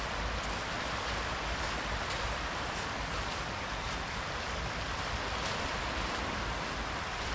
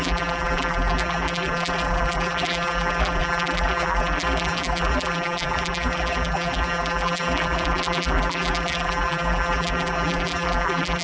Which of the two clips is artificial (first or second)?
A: second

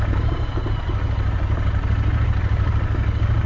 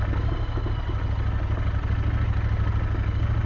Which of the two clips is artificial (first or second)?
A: first